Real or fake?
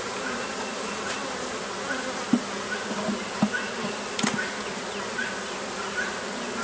real